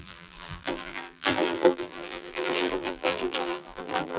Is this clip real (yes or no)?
no